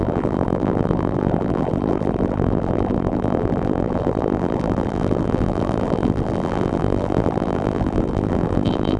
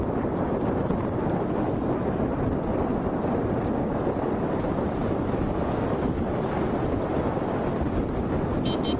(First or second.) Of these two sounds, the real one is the second